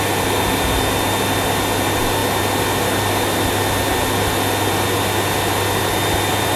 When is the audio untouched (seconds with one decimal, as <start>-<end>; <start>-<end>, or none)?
0.0-6.6